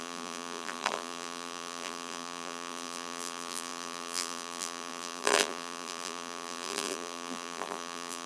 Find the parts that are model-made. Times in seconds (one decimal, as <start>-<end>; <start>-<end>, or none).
0.0-8.3